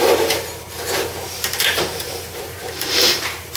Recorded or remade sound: remade